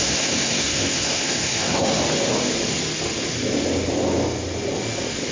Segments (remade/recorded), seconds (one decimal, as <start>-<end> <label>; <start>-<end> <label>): 0.0-2.0 remade; 2.0-5.3 recorded